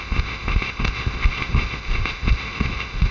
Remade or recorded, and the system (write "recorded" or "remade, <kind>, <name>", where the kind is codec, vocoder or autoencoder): remade, codec, ZipCodec